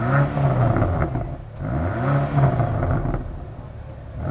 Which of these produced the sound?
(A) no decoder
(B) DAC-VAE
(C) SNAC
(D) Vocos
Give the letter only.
A